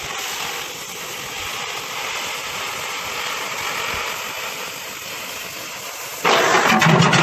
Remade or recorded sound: recorded